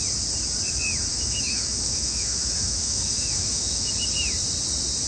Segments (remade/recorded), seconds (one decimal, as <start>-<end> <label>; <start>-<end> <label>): 0.0-1.1 recorded; 1.1-3.9 remade; 3.9-5.1 recorded